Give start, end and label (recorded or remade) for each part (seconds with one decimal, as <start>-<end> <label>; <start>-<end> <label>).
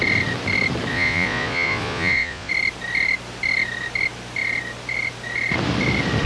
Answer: 0.0-0.9 recorded; 0.9-2.5 remade; 2.5-6.3 recorded